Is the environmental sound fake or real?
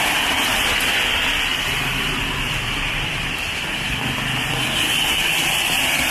fake